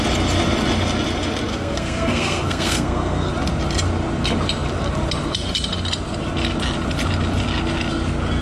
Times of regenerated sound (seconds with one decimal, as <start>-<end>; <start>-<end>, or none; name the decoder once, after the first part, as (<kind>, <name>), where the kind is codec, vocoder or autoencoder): 1.5-3.3 (codec, SNAC)